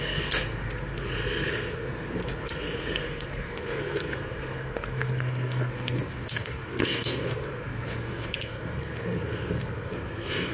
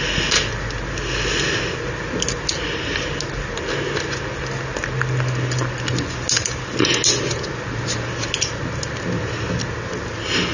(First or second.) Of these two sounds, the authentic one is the second